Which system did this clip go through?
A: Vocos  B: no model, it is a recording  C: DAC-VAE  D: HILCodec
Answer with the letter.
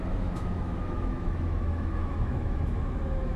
C